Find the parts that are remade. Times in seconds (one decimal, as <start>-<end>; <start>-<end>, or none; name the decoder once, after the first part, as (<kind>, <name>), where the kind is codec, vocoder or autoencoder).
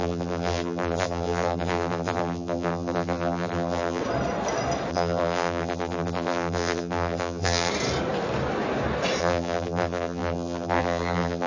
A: 0.0-4.0 (vocoder, BigVGAN v2); 4.9-7.7; 9.2-11.5